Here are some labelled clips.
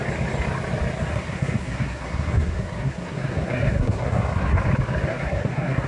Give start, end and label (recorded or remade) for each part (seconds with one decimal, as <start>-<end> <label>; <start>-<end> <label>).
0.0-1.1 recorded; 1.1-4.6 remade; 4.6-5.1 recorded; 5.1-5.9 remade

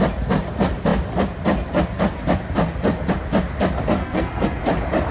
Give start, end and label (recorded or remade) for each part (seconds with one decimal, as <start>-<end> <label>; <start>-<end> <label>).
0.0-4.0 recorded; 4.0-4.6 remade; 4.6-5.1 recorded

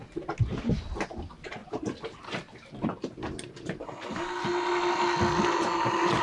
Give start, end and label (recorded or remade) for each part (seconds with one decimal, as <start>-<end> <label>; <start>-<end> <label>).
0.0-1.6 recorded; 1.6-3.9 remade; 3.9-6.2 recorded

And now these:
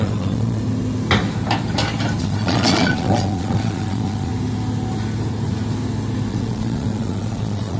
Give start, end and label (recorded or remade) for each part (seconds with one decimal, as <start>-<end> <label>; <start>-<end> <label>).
0.0-0.6 remade; 0.6-2.2 recorded; 2.2-4.3 remade; 4.3-6.3 recorded; 6.3-7.8 remade

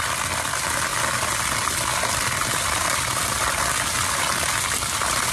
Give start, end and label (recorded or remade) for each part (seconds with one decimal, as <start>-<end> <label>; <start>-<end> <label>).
0.0-5.3 recorded

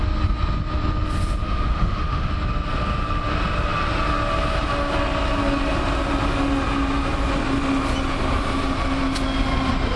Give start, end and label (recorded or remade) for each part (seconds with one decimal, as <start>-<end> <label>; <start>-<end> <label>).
0.0-1.4 recorded; 1.4-2.3 remade; 2.3-10.0 recorded